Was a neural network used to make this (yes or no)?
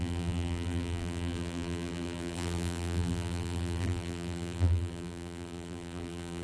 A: yes